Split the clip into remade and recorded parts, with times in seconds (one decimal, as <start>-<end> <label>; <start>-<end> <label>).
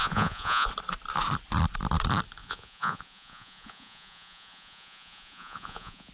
0.0-0.7 remade; 0.7-2.4 recorded; 2.4-6.1 remade